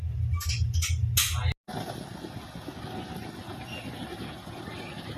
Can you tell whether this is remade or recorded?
recorded